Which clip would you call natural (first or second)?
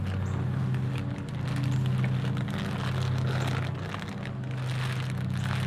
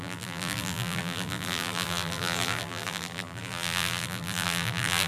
first